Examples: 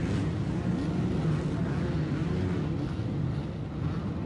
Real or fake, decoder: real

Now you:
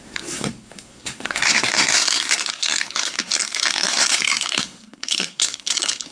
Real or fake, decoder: fake, codec, SNAC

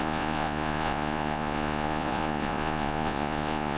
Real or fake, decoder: fake, vocoder, Vocos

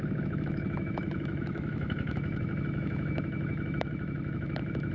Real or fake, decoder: fake, autoencoder, DAC-VAE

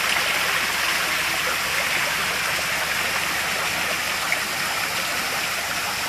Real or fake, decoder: real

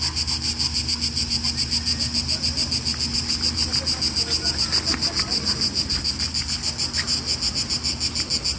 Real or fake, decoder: real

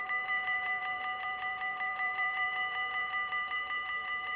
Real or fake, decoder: fake, vocoder, BigVGAN v2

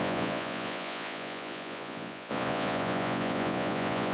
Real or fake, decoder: fake, vocoder, Vocos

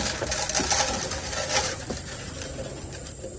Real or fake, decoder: real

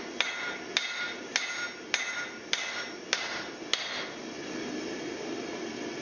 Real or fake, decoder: real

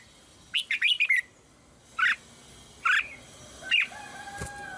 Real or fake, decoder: real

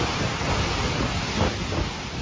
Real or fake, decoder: real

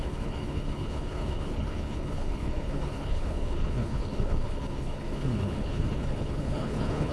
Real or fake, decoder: fake, codec, HILCodec